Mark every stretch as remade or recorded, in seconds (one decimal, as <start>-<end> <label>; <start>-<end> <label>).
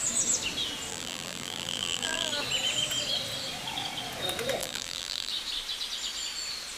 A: 0.0-0.9 recorded; 0.9-2.3 remade; 2.3-4.6 recorded; 4.6-5.3 remade; 5.3-6.8 recorded